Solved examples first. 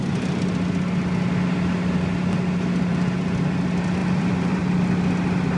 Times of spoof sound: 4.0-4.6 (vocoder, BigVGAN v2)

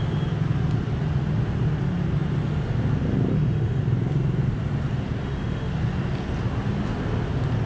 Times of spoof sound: 3.3-3.8 (autoencoder, DAC-VAE); 5.2-5.7

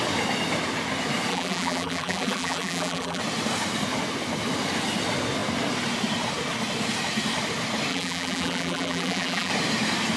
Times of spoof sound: 1.3-3.2 (vocoder, BigVGAN v2); 7.9-9.5

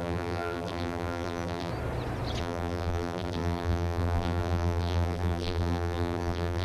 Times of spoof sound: 0.0-1.7 (vocoder, BigVGAN v2); 2.4-6.6

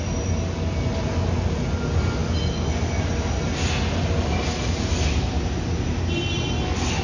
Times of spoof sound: none

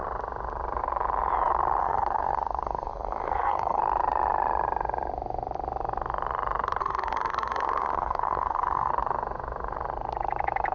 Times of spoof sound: 1.8-3.8 (codec, SNAC); 6.8-8.9

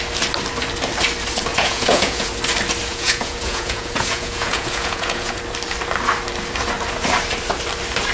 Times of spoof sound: 1.5-2.3 (vocoder, Vocos); 2.9-5.4

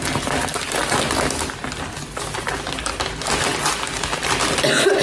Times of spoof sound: none